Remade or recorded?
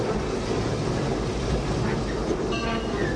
recorded